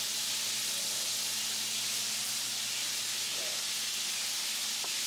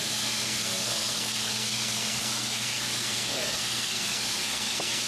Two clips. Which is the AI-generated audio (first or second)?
second